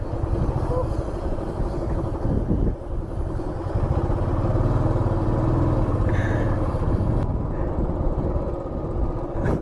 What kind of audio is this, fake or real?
real